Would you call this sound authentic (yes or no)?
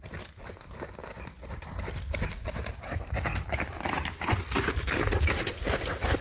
yes